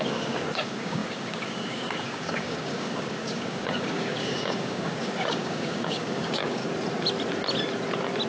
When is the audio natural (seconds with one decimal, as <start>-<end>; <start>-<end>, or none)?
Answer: 6.6-8.3